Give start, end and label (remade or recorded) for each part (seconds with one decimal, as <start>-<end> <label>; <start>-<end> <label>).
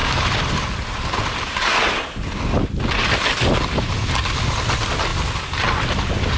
0.0-6.4 recorded